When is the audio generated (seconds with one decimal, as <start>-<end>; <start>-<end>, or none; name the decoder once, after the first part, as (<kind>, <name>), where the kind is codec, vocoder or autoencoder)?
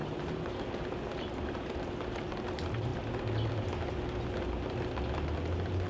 0.0-0.6 (vocoder, BigVGAN v2)